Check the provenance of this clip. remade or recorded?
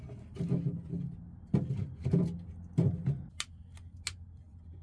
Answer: recorded